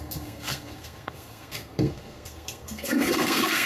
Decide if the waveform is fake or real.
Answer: fake